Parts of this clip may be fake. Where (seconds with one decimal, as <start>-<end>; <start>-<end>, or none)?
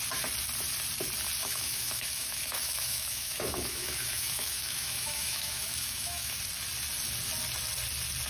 1.4-6.4